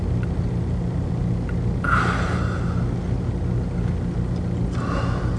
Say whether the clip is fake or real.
real